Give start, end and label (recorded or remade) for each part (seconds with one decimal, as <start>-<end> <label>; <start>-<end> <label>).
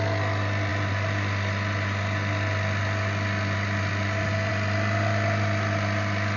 0.0-6.4 recorded